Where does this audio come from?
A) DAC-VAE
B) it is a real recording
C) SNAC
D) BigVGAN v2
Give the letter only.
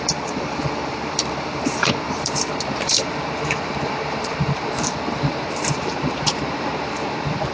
D